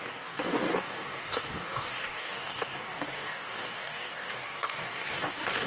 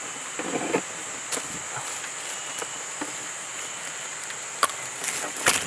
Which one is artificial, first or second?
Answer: first